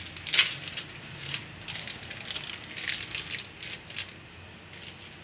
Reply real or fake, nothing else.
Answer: real